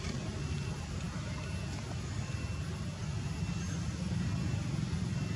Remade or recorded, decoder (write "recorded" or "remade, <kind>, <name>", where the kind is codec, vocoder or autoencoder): recorded